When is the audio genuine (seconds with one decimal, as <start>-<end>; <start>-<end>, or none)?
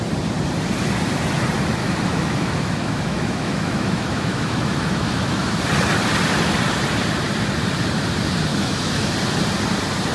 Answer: 0.0-1.8; 5.6-8.5; 9.1-10.1